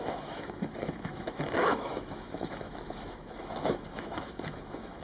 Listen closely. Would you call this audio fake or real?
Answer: fake